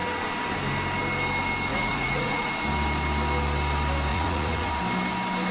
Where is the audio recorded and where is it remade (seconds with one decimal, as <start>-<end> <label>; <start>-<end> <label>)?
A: 0.0-1.7 recorded; 1.7-2.5 remade; 2.5-4.1 recorded; 4.1-4.7 remade; 4.7-5.5 recorded